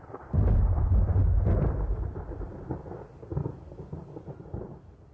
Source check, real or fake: real